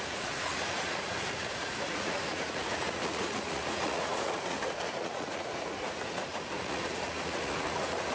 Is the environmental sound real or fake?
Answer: fake